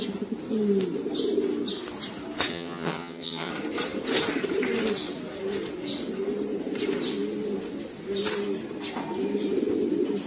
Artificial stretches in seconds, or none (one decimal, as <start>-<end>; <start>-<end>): 2.5-3.5

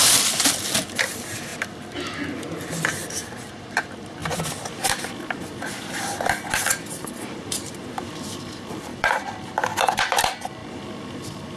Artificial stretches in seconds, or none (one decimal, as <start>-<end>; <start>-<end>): 0.0-1.5; 3.3-4.2; 6.7-10.6